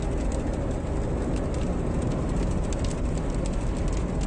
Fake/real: real